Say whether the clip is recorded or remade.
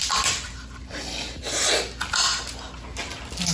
recorded